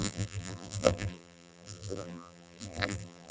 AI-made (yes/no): yes